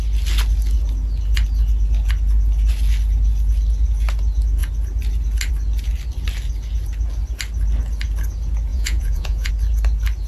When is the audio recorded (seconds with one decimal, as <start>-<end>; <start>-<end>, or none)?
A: 0.0-8.7; 9.5-10.3